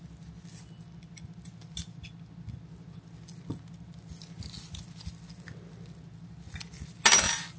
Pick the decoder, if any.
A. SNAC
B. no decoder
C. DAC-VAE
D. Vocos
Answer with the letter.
B